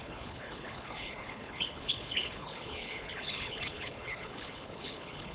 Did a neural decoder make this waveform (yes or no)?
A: yes